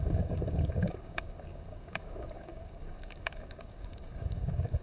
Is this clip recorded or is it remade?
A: remade